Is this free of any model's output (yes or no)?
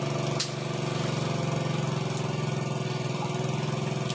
yes